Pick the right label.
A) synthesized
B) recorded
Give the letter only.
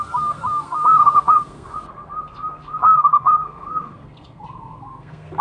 A